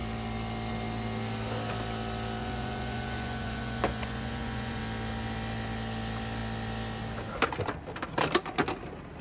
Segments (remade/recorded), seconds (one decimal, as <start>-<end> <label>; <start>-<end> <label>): 0.0-2.4 recorded; 2.4-4.8 remade; 4.8-9.2 recorded